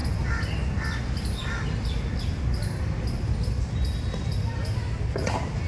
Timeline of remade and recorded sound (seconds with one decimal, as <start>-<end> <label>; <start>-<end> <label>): 0.0-5.7 recorded